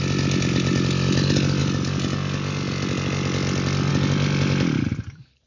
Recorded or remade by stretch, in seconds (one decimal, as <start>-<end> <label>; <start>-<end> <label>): 0.0-5.5 recorded